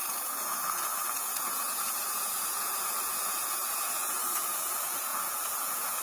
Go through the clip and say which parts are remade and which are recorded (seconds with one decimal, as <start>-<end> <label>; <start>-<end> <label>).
0.0-6.0 remade